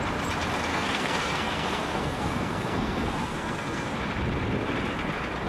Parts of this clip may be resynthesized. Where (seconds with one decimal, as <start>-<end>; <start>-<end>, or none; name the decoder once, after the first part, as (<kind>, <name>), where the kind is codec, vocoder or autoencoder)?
0.7-4.0 (codec, SNAC)